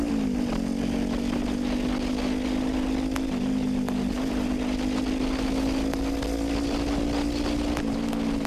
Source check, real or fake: real